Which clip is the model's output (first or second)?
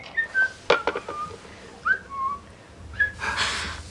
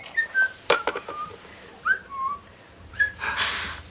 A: second